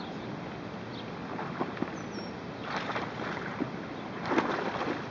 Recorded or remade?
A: recorded